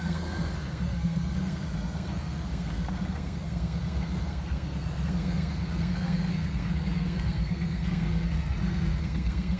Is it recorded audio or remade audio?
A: remade